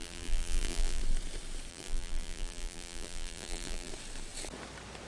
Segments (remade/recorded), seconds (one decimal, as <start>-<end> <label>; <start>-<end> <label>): 0.0-1.0 remade; 1.0-1.7 recorded; 1.7-3.9 remade; 3.9-5.1 recorded